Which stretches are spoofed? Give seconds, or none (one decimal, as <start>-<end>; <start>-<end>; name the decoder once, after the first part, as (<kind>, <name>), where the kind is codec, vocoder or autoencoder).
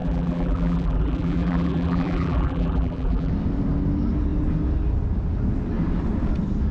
0.0-3.3 (vocoder, BigVGAN v2)